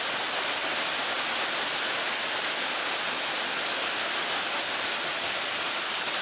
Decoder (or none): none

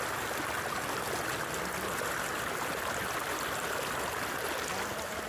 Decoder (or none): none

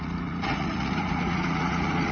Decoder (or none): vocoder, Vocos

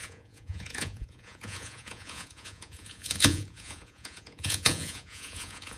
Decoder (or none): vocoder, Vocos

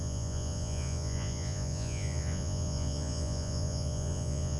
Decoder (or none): vocoder, Vocos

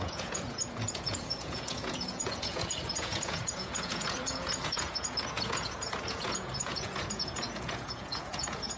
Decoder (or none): vocoder, Vocos